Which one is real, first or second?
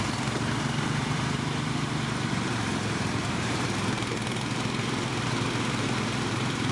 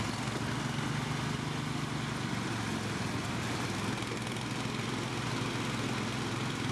second